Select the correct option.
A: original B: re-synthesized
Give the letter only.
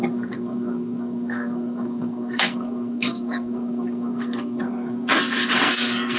B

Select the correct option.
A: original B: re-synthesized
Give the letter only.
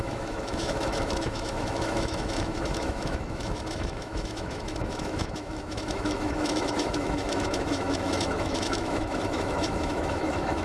B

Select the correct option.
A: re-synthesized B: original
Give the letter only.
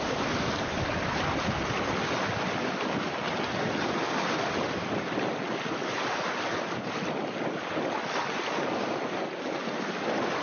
B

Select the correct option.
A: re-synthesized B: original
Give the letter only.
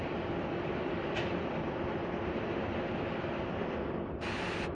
B